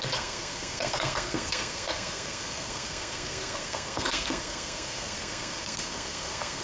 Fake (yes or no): yes